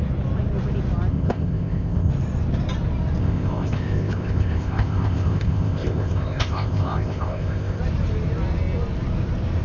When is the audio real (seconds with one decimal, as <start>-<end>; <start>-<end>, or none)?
0.0-1.1; 2.1-3.2; 7.8-9.6